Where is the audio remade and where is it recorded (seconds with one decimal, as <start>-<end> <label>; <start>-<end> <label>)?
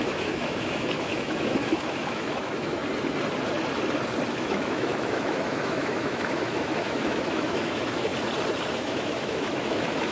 0.0-2.8 remade; 2.8-4.3 recorded; 4.3-8.1 remade; 8.1-8.8 recorded; 8.8-10.1 remade